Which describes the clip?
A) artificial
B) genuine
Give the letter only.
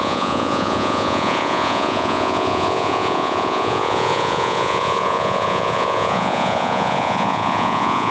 A